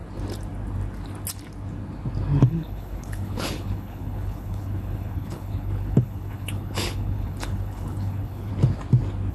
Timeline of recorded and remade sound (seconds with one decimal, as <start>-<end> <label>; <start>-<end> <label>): 0.0-2.4 recorded; 2.4-8.5 remade; 8.5-9.3 recorded